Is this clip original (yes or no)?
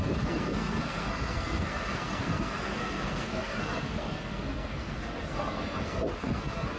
no